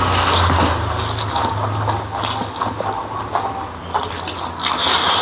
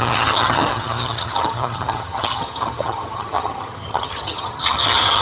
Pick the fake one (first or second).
second